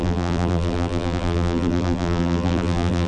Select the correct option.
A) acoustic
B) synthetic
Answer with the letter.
B